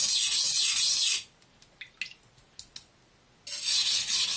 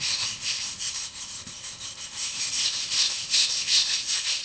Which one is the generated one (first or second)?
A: second